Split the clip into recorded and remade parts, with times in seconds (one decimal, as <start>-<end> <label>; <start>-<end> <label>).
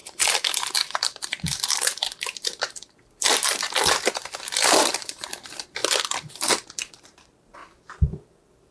0.0-0.7 recorded; 0.7-2.0 remade; 2.0-4.9 recorded; 4.9-5.8 remade; 5.8-6.7 recorded; 6.7-7.6 remade; 7.6-8.7 recorded